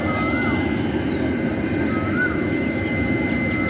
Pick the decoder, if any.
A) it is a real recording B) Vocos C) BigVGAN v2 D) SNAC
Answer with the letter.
A